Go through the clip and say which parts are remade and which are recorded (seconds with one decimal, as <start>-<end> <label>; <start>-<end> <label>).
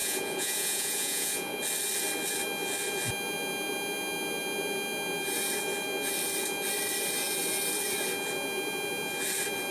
0.0-1.6 remade; 1.6-9.7 recorded